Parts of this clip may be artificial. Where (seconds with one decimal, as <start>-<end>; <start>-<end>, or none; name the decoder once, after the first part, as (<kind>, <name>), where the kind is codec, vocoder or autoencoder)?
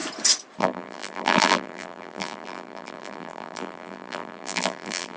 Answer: 0.6-5.2 (vocoder, BigVGAN v2)